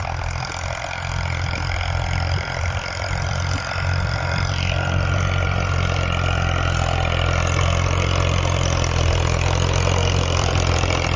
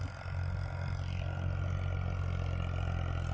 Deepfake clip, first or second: first